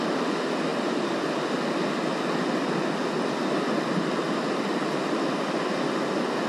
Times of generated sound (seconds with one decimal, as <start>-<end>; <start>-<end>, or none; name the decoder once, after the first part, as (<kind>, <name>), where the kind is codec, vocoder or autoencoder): none